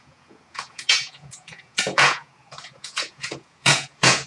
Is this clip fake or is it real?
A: fake